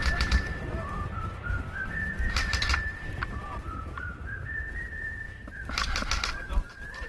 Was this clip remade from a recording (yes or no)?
yes